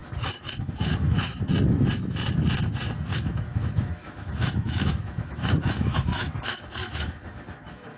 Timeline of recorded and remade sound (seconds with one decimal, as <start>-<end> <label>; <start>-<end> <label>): 0.0-1.5 remade; 1.5-3.1 recorded; 3.1-8.0 remade